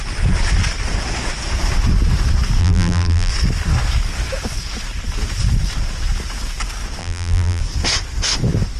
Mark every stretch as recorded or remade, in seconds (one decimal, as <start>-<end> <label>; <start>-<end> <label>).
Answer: 0.0-2.6 recorded; 2.6-3.3 remade; 3.3-7.0 recorded; 7.0-7.6 remade; 7.6-8.8 recorded